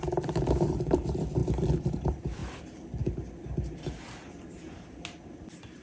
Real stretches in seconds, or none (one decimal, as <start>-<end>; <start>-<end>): 1.4-1.9; 2.4-5.8